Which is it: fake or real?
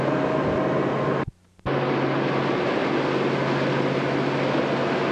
real